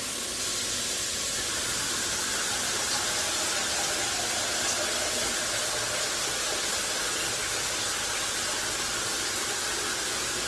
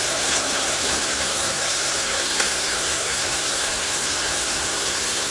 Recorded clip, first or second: first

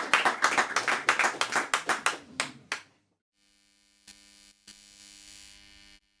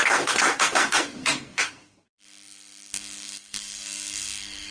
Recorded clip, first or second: first